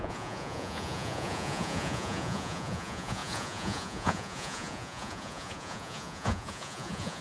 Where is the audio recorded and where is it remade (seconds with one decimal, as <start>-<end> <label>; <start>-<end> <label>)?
0.0-7.2 remade